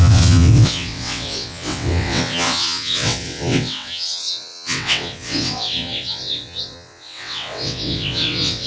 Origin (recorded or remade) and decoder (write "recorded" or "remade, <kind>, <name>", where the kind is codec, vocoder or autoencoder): remade, vocoder, WaveNeXt